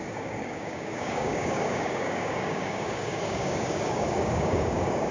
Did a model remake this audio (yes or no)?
yes